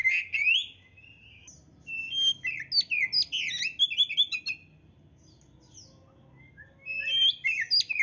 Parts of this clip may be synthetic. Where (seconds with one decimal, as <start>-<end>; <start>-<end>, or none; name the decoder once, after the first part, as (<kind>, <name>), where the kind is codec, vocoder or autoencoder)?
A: none